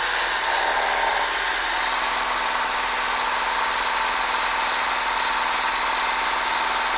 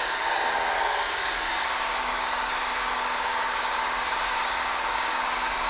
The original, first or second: first